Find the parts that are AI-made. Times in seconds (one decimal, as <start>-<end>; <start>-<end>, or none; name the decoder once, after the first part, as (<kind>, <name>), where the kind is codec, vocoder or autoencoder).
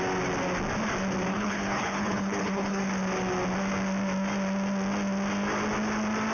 1.3-2.8 (codec, HILCodec)